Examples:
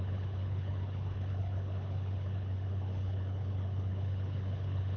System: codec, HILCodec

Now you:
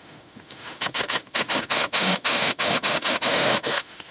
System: autoencoder, DAC-VAE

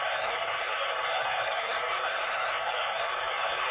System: codec, SNAC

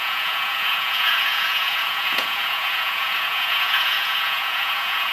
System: vocoder, Vocos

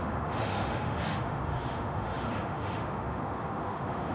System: autoencoder, DAC-VAE